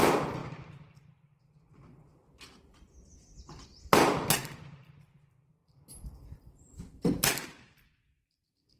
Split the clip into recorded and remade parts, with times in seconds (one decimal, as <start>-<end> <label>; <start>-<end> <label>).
0.0-4.4 remade; 4.4-5.0 recorded; 5.0-8.8 remade